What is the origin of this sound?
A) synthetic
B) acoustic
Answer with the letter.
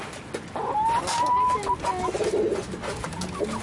B